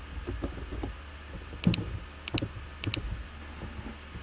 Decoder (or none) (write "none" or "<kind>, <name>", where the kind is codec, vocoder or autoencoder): none